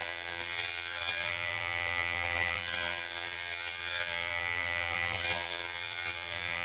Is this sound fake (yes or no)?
yes